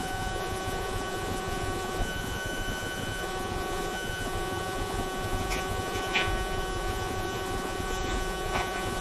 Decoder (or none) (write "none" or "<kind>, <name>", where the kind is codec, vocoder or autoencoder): vocoder, Vocos